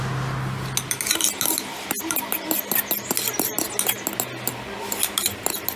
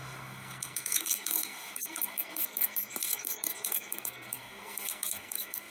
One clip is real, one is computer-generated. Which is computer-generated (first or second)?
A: second